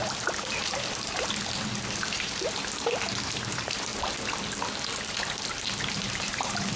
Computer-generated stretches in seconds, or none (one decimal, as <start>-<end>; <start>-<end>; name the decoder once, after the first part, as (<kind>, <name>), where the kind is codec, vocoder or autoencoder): 0.0-0.6 (vocoder, BigVGAN v2); 2.1-3.9; 6.1-6.8